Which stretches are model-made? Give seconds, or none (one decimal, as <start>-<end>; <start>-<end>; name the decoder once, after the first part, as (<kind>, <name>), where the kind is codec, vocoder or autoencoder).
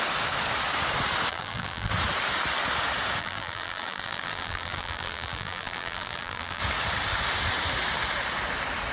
1.3-1.9 (vocoder, BigVGAN v2); 3.2-6.6